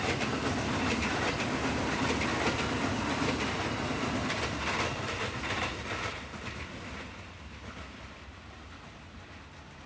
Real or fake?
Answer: real